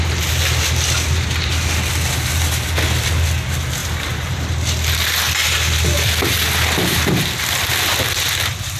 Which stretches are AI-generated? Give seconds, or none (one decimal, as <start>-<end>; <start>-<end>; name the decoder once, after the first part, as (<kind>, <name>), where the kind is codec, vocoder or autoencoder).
3.8-4.5 (vocoder, BigVGAN v2)